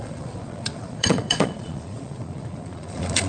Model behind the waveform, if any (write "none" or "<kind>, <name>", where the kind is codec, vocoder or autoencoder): vocoder, Vocos